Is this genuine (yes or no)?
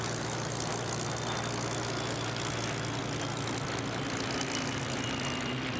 yes